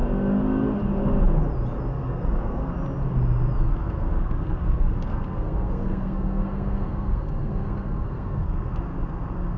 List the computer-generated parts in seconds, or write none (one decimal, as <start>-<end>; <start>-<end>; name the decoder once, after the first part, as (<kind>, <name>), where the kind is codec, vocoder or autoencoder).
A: 1.9-2.7 (codec, SNAC); 3.7-8.8